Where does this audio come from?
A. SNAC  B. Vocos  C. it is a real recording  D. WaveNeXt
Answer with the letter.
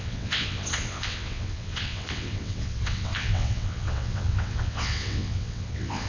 D